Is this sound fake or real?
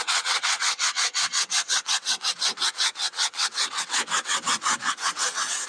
fake